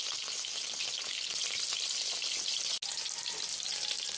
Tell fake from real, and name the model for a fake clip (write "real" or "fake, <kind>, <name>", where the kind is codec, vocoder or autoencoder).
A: real